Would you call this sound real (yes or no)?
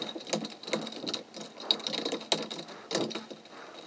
yes